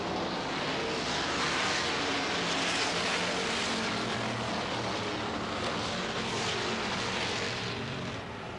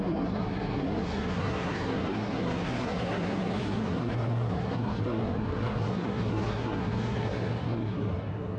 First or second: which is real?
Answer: first